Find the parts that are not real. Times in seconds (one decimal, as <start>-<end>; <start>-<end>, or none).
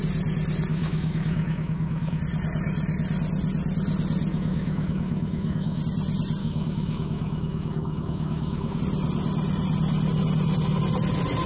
0.7-2.2; 4.3-5.8; 6.4-8.8